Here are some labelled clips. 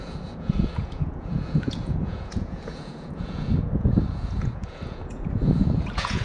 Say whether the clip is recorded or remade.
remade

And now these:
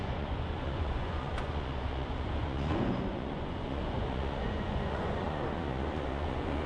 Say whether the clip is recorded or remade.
remade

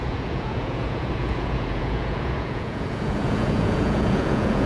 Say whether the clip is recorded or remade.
remade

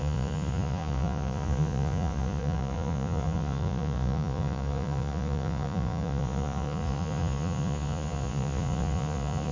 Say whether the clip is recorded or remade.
remade